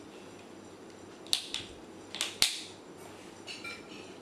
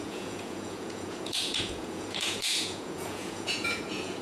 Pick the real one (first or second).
first